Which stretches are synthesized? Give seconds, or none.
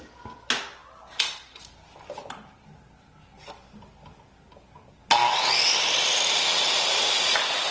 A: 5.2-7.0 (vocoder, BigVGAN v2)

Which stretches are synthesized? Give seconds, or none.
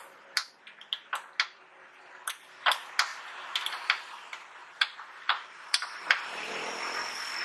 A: 4.6-6.5 (vocoder, BigVGAN v2)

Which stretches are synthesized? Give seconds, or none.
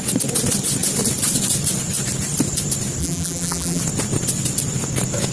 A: 3.0-3.8 (vocoder, BigVGAN v2)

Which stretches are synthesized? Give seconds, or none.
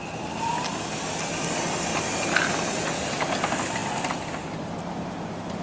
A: none